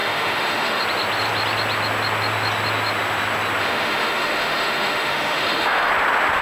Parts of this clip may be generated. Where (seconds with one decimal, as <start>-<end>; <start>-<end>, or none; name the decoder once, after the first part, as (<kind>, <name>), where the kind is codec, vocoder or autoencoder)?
0.0-0.8 (autoencoder, DAC-VAE); 3.6-5.9